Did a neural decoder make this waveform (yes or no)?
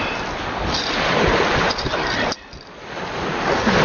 no